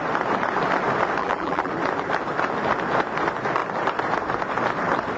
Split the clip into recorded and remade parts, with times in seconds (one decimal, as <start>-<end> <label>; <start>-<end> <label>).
0.0-1.2 recorded; 1.2-1.7 remade; 1.7-5.2 recorded